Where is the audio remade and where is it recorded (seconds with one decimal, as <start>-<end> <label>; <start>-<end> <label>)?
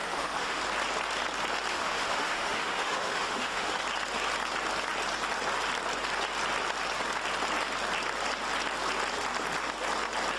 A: 0.0-0.6 remade; 0.6-1.7 recorded; 1.7-3.8 remade; 3.8-10.4 recorded